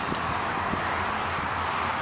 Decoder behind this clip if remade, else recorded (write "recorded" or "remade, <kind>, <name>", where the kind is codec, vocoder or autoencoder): recorded